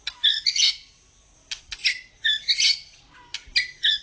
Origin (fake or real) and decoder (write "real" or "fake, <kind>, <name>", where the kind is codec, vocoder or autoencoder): real